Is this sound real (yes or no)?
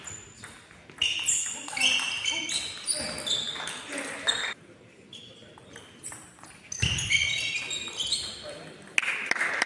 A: yes